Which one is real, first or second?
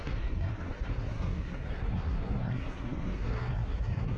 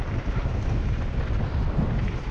second